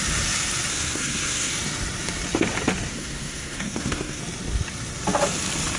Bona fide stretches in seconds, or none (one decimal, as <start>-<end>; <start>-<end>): 0.0-0.7; 1.5-2.9; 4.2-5.8